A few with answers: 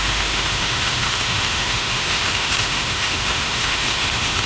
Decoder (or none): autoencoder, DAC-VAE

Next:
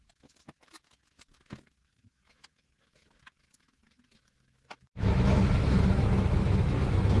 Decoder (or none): autoencoder, DAC-VAE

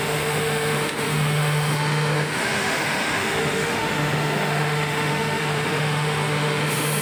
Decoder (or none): autoencoder, DAC-VAE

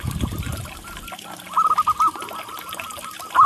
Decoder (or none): none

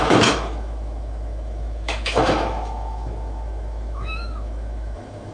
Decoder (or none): autoencoder, DAC-VAE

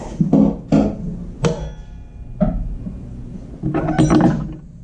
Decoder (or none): none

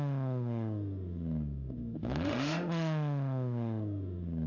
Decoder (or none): autoencoder, DAC-VAE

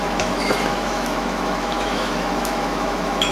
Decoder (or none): autoencoder, DAC-VAE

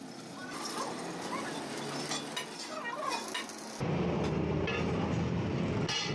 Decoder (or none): none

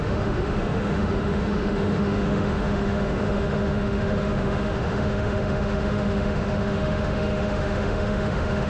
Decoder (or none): autoencoder, DAC-VAE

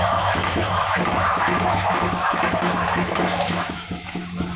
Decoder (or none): autoencoder, DAC-VAE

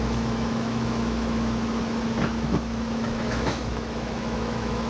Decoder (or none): autoencoder, DAC-VAE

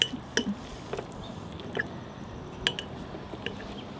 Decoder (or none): none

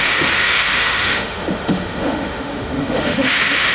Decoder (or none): autoencoder, DAC-VAE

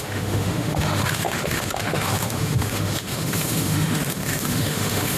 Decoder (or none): autoencoder, DAC-VAE